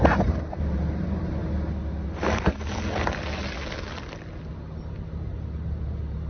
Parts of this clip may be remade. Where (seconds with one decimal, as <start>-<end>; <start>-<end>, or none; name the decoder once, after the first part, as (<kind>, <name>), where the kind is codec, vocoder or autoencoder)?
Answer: 0.0-1.4 (vocoder, BigVGAN v2); 4.8-6.3